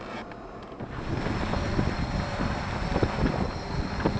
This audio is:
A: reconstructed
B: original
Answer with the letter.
B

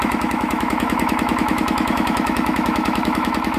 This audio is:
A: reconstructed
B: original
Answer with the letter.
A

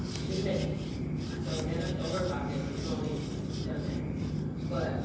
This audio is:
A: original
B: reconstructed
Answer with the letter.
A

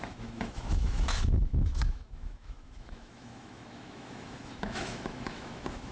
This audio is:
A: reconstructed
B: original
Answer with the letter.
A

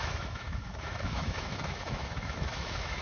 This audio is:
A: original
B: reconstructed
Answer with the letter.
B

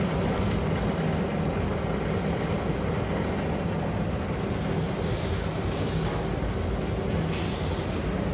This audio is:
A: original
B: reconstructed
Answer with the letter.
A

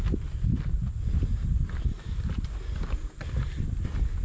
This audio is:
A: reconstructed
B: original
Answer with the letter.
B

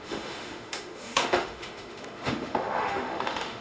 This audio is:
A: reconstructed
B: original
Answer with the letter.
A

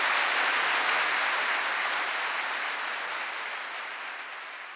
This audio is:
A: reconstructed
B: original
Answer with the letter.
B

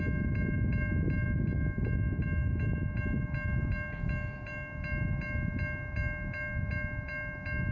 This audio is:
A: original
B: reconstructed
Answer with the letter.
A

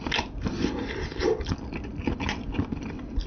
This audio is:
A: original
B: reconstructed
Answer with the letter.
A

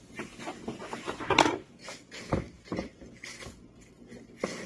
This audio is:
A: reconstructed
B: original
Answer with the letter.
B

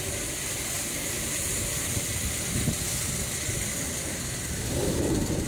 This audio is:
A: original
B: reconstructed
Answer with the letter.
A